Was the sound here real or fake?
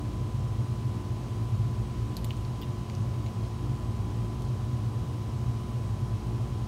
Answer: real